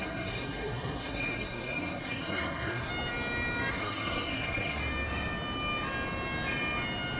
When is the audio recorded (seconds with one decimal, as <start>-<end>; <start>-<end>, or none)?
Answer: 2.9-3.7; 4.8-7.2